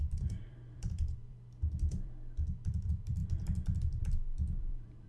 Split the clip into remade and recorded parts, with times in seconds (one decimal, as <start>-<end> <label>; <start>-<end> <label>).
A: 0.0-3.2 remade; 3.2-3.8 recorded; 3.8-5.1 remade